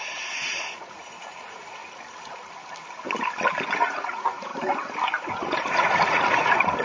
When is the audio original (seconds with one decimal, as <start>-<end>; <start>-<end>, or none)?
1.8-3.7; 4.5-5.3